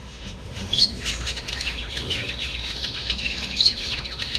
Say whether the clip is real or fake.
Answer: fake